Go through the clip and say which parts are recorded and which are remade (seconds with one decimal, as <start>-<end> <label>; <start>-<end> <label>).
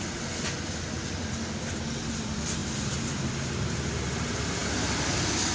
0.0-5.5 recorded